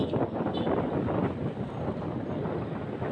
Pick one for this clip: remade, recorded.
recorded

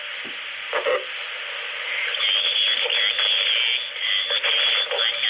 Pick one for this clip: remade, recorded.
remade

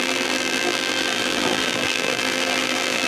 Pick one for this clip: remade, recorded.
remade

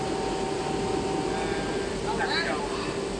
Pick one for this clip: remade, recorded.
recorded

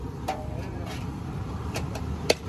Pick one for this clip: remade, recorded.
remade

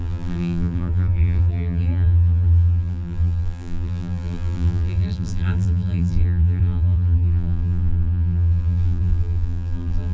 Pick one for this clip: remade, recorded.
remade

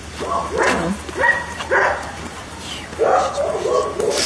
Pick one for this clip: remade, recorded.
recorded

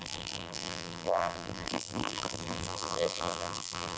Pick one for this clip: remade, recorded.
remade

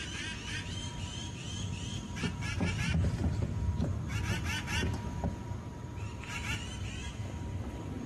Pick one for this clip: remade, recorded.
remade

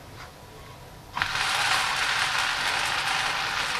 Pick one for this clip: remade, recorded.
recorded